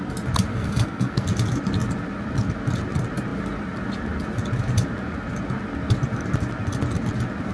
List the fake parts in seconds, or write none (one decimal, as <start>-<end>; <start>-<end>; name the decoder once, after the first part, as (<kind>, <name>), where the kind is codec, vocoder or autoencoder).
0.5-1.3 (codec, SNAC)